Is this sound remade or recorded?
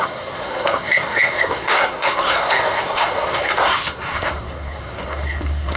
remade